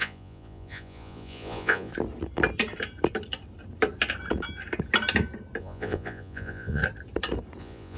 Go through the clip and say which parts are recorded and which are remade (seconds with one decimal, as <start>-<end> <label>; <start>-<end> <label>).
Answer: 0.0-1.9 remade; 1.9-5.6 recorded; 5.6-6.8 remade; 6.8-7.6 recorded; 7.6-8.0 remade